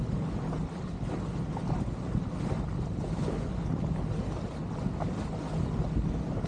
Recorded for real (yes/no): yes